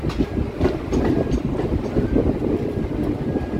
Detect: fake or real real